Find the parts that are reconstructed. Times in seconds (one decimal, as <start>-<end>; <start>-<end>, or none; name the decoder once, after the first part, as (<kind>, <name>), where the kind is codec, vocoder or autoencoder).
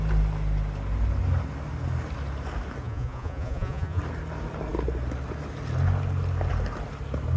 2.8-4.0 (vocoder, Vocos)